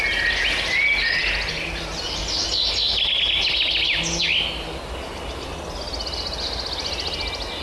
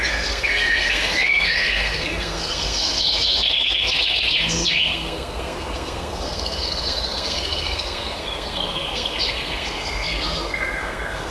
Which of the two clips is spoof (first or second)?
second